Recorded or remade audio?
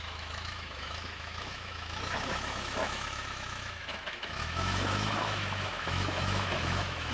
remade